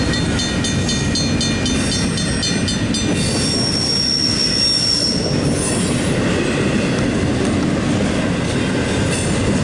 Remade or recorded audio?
recorded